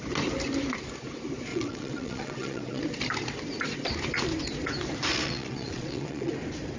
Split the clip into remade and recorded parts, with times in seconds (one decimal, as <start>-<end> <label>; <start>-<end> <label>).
0.0-1.5 recorded; 1.5-2.8 remade; 2.8-5.1 recorded; 5.1-6.3 remade; 6.3-6.8 recorded